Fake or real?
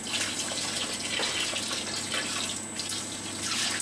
real